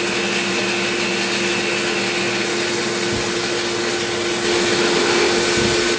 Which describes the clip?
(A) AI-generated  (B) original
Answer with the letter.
B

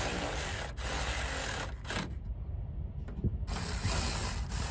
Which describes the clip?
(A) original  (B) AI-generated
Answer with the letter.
A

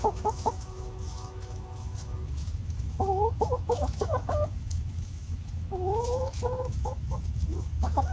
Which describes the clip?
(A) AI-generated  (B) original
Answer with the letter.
A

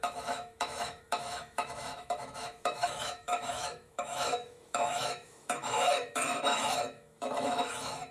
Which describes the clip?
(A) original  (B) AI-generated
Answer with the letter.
B